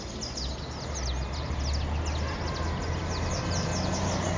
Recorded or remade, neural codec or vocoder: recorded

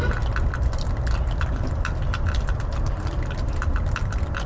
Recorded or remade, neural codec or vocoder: recorded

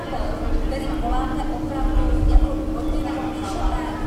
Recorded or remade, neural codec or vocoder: recorded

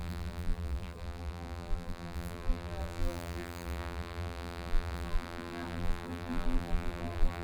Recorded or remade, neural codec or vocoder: remade, vocoder, BigVGAN v2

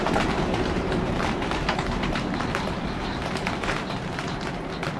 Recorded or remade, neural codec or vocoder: remade, vocoder, BigVGAN v2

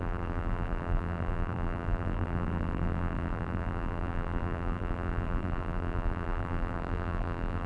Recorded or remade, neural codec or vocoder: remade, vocoder, BigVGAN v2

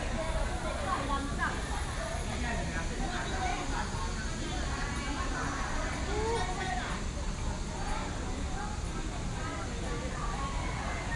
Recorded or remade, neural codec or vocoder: recorded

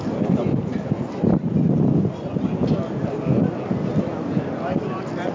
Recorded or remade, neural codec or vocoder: recorded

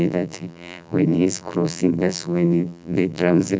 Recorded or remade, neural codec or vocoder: remade, vocoder, BigVGAN v2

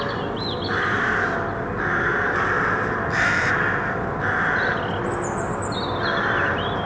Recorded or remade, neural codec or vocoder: recorded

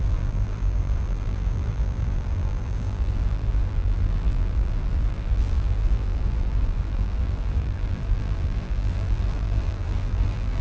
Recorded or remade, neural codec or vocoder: remade, vocoder, BigVGAN v2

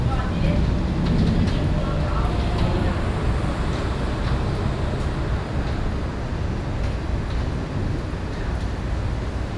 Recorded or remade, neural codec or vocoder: recorded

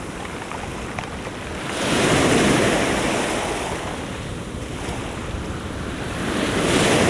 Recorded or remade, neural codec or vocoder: recorded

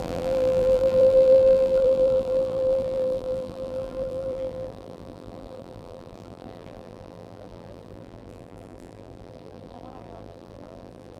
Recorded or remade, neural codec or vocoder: remade, vocoder, BigVGAN v2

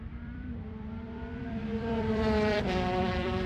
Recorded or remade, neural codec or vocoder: remade, vocoder, BigVGAN v2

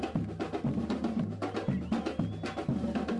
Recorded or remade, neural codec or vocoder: recorded